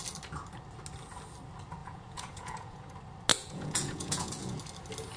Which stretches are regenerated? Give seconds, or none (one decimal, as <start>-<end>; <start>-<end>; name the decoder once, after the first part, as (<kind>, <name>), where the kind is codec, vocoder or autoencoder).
1.8-2.9 (vocoder, Vocos); 3.3-4.6